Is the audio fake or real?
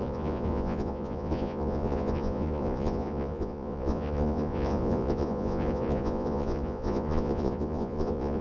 fake